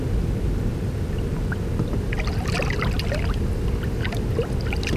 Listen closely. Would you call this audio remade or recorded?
recorded